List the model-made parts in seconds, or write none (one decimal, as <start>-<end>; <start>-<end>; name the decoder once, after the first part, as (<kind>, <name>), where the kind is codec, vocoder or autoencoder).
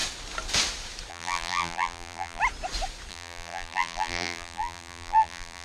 1.1-2.4 (vocoder, BigVGAN v2); 3.1-5.6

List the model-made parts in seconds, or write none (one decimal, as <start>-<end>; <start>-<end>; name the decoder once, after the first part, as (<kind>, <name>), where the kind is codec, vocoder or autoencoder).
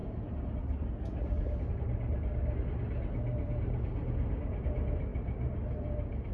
none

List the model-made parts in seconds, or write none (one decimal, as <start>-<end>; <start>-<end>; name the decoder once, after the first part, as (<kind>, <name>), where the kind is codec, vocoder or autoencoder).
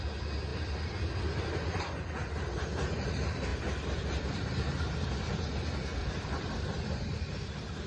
0.5-1.4 (vocoder, BigVGAN v2); 3.5-5.4; 6.0-6.5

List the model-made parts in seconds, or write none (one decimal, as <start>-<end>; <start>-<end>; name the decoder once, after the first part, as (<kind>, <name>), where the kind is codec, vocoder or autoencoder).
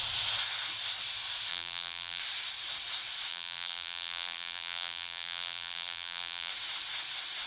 1.5-2.2 (vocoder, BigVGAN v2); 3.3-6.5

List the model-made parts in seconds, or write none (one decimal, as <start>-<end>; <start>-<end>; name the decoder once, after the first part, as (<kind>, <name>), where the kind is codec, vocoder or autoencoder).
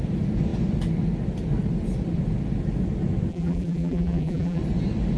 3.3-4.6 (vocoder, BigVGAN v2)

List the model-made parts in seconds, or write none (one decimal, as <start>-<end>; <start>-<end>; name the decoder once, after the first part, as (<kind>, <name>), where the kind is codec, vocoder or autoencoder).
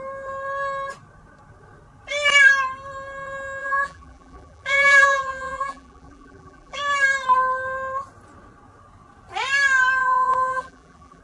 3.6-6.8 (vocoder, BigVGAN v2); 10.0-11.2